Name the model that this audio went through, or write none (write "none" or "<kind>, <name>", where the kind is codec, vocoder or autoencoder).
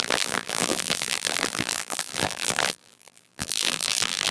vocoder, BigVGAN v2